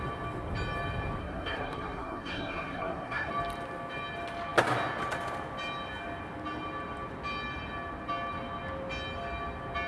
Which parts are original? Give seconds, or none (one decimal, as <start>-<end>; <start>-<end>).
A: 0.0-1.2; 3.3-9.9